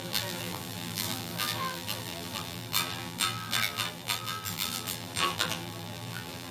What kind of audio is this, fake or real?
fake